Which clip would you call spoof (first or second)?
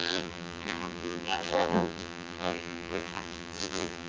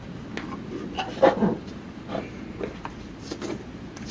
first